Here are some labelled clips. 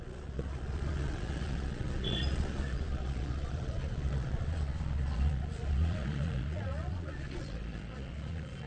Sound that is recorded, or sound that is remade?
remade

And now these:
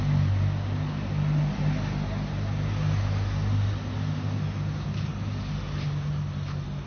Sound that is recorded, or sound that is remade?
recorded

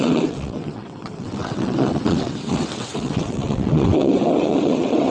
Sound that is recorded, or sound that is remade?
remade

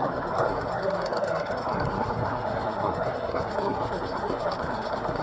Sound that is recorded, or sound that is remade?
remade